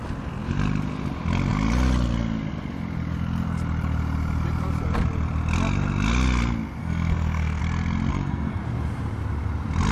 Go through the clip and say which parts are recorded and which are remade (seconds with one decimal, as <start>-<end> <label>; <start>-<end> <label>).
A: 0.0-6.8 recorded; 6.8-7.6 remade; 7.6-8.1 recorded; 8.1-8.6 remade; 8.6-9.9 recorded

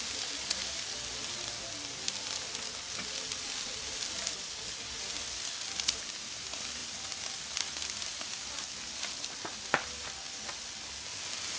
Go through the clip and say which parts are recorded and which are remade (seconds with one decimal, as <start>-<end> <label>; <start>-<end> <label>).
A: 0.0-11.6 recorded

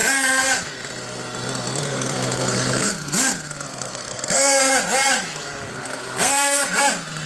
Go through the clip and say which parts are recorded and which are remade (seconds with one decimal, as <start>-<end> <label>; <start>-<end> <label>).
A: 0.0-1.8 recorded; 1.8-2.9 remade; 2.9-3.7 recorded; 3.7-4.6 remade; 4.6-5.7 recorded; 5.7-6.8 remade; 6.8-7.3 recorded